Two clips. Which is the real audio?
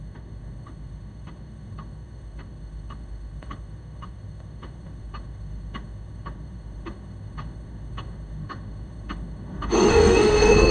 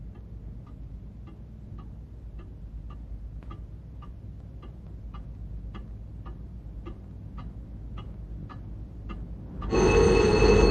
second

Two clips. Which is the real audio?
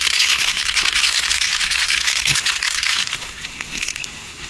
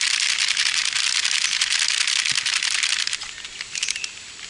second